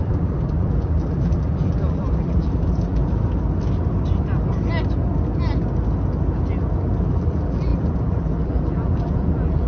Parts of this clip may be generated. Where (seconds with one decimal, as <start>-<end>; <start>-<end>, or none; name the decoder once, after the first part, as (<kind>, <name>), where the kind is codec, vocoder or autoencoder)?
0.0-3.0 (vocoder, BigVGAN v2); 7.0-9.7